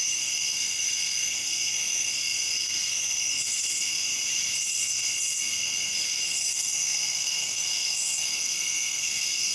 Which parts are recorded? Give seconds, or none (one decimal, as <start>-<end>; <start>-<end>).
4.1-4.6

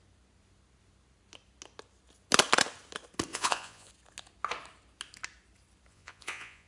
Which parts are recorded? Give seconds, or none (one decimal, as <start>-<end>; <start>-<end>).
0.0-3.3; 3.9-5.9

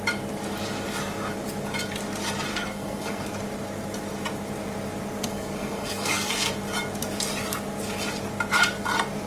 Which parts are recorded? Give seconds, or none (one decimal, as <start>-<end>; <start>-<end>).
0.0-2.5; 3.2-5.3; 6.5-9.3